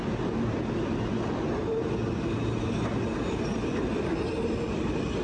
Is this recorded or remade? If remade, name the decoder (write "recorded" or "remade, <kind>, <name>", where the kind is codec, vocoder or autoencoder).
recorded